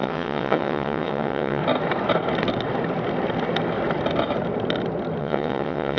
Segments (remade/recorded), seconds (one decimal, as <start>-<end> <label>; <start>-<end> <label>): 0.0-1.6 remade; 1.6-5.2 recorded; 5.2-6.0 remade